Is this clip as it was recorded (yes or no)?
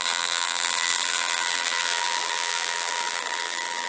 no